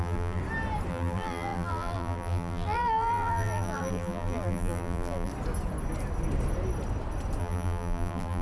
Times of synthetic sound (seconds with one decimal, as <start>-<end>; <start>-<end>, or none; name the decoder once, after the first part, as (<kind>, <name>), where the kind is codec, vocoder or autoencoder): 0.0-0.4 (vocoder, BigVGAN v2); 0.9-5.3; 7.4-8.4